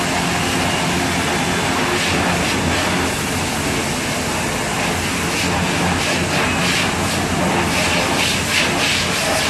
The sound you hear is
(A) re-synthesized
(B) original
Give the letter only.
B